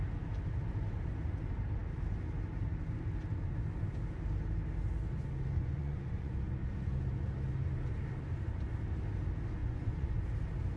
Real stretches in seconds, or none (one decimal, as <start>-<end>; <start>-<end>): 0.0-5.6; 6.3-9.6; 10.1-10.8